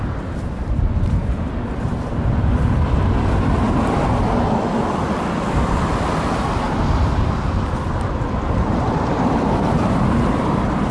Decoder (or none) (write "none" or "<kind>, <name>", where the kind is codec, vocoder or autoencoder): vocoder, BigVGAN v2